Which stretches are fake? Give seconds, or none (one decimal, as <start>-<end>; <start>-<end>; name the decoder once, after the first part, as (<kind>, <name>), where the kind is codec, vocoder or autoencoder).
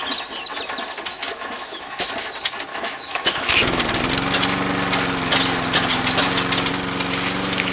1.1-2.1 (autoencoder, DAC-VAE); 2.7-3.8